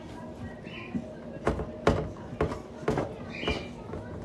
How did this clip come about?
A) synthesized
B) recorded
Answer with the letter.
B